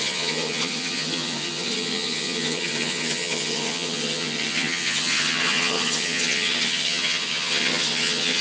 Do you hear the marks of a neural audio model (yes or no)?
yes